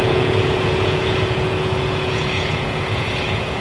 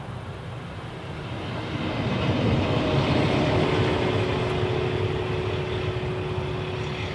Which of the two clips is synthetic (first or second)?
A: first